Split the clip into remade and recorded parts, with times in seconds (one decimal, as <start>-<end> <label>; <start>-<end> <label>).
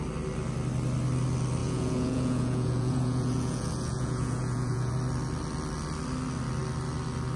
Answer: 0.0-1.6 recorded; 1.6-4.9 remade; 4.9-7.4 recorded